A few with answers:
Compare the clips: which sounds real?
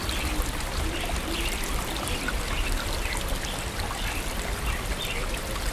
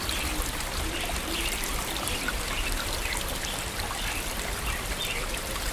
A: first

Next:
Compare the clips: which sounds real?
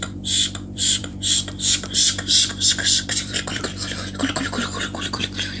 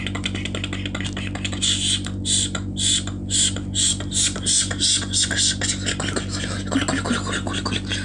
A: second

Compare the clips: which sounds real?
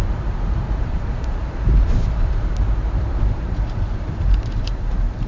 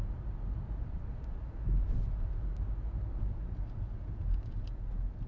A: second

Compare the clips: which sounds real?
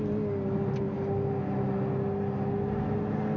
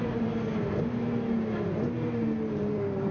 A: first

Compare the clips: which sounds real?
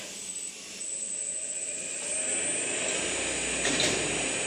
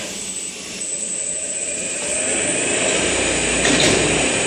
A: first